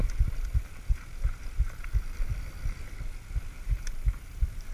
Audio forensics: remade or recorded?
recorded